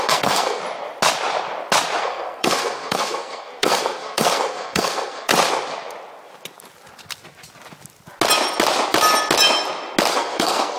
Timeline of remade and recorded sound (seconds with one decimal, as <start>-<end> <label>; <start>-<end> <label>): 0.0-0.6 remade; 0.6-2.0 recorded; 2.0-5.3 remade; 5.3-10.1 recorded; 10.1-10.8 remade